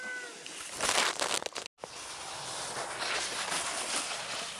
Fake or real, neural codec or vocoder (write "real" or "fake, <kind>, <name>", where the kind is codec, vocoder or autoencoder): real